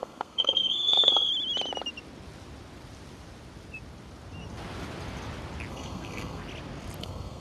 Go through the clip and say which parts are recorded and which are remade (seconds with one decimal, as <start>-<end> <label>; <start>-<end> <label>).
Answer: 0.0-1.3 remade; 1.3-5.7 recorded; 5.7-6.4 remade; 6.4-7.0 recorded; 7.0-7.4 remade